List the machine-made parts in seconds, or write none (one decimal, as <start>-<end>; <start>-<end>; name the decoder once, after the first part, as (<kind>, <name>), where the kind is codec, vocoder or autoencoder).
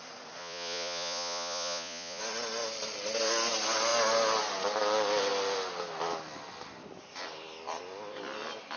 0.4-2.2 (vocoder, Vocos)